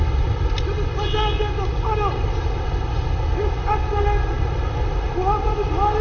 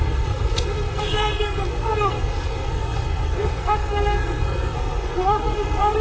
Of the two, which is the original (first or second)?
first